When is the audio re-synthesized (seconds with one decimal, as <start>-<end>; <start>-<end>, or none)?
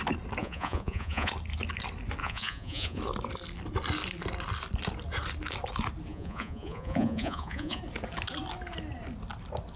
0.4-1.3; 2.2-3.0; 6.1-7.8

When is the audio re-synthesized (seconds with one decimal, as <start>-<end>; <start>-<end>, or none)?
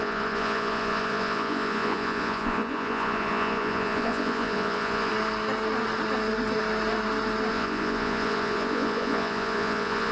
0.0-5.1; 7.5-10.1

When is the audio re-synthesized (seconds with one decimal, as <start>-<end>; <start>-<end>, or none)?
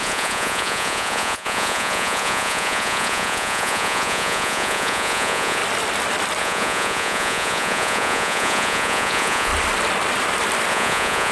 0.0-5.6; 6.4-9.5; 10.7-11.3